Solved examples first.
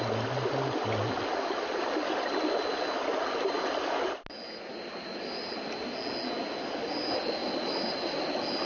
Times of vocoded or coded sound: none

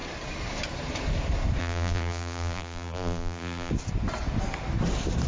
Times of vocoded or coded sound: 1.6-3.7 (vocoder, BigVGAN v2)

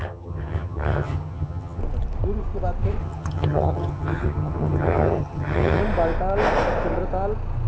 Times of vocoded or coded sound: 0.0-1.8 (vocoder, HiFi-GAN); 3.0-5.8